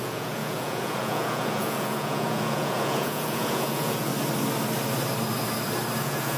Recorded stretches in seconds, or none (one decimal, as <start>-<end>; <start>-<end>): 4.1-6.0